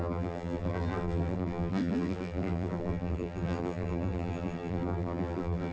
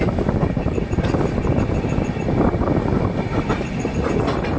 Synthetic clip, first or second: first